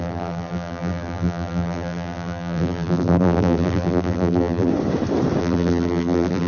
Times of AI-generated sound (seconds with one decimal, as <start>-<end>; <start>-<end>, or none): 0.0-4.7; 5.4-6.5